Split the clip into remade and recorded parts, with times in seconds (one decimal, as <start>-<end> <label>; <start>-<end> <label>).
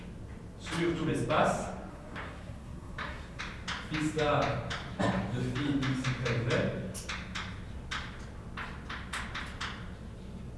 0.0-1.9 recorded; 1.9-3.4 remade; 3.4-10.6 recorded